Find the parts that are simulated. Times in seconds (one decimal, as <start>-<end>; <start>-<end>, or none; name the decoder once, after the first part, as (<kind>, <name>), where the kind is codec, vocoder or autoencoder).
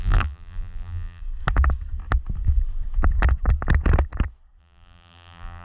0.0-1.2 (vocoder, BigVGAN v2); 4.6-5.6